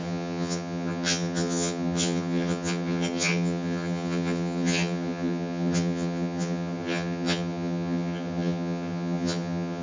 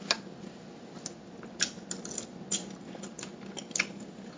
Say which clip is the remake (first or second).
first